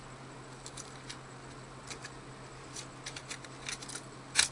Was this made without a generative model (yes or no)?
yes